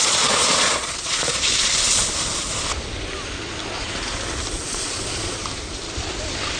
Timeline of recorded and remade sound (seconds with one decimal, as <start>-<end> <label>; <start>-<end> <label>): 0.0-1.5 remade; 1.5-4.5 recorded; 4.5-5.4 remade; 5.4-6.6 recorded

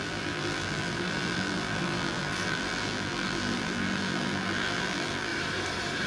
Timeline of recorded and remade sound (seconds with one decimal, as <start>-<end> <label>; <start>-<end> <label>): 0.0-5.3 remade; 5.3-6.1 recorded

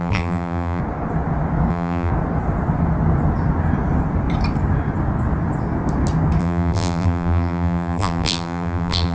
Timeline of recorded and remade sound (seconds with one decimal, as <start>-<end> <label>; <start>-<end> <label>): 0.0-0.8 remade; 0.8-1.7 recorded; 1.7-2.1 remade; 2.1-6.4 recorded; 6.4-9.1 remade

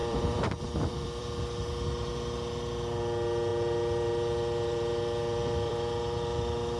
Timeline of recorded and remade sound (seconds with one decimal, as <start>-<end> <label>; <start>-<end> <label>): 0.0-2.1 remade; 2.1-3.5 recorded; 3.5-6.8 remade

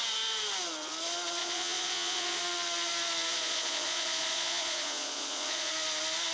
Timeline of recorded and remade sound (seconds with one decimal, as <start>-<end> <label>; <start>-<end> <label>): 0.0-1.4 recorded; 1.4-2.4 remade; 2.4-3.3 recorded; 3.3-5.7 remade; 5.7-6.3 recorded

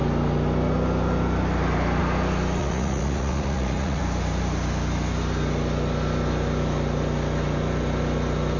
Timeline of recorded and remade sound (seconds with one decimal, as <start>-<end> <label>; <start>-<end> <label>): 0.0-2.6 recorded; 2.6-4.0 remade; 4.0-8.6 recorded

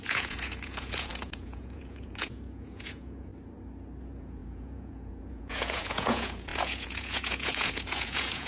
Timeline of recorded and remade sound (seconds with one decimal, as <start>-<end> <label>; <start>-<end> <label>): 0.0-3.3 remade; 3.3-4.0 recorded; 4.0-8.5 remade

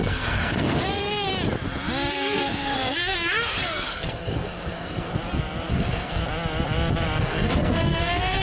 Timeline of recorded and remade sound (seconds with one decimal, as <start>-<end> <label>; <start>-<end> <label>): 0.0-1.3 remade; 1.3-2.1 recorded; 2.1-5.1 remade; 5.1-5.7 recorded; 5.7-6.2 remade; 6.2-7.2 recorded; 7.2-8.4 remade